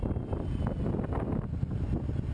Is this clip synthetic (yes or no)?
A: no